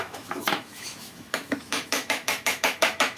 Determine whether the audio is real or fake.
fake